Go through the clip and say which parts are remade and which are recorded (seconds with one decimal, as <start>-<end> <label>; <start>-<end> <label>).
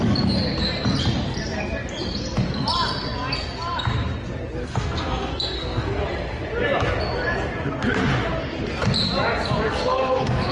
0.0-4.6 recorded; 4.6-6.0 remade; 6.0-9.7 recorded; 9.7-10.5 remade